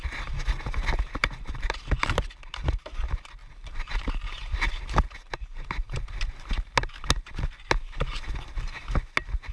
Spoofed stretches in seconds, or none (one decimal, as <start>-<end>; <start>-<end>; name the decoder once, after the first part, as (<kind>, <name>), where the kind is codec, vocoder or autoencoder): 1.2-2.7 (vocoder, BigVGAN v2); 3.4-6.1